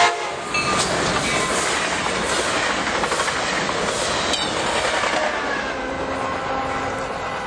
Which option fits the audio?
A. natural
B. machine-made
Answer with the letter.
A